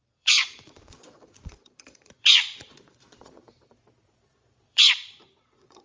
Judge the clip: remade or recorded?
remade